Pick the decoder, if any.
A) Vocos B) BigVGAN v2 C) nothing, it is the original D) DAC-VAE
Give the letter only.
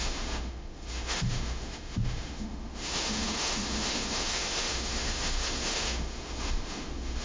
D